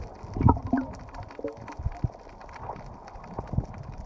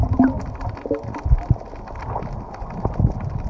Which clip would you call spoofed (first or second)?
first